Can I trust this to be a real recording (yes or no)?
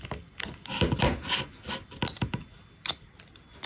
yes